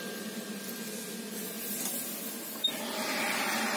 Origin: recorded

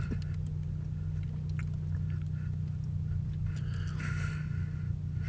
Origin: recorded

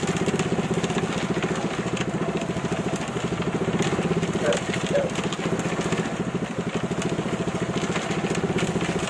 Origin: recorded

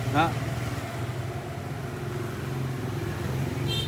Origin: recorded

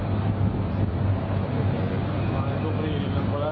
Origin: recorded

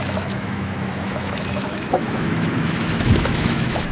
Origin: remade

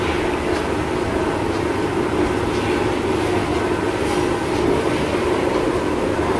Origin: recorded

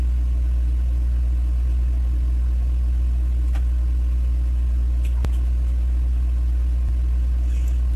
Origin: recorded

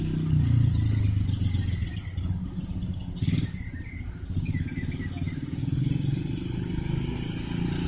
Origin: recorded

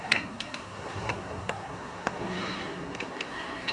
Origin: remade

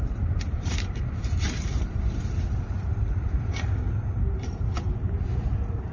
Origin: remade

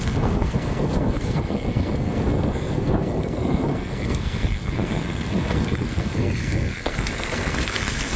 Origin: remade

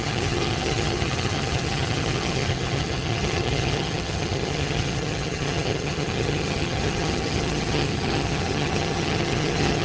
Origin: remade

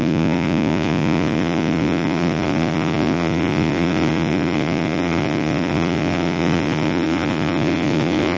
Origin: remade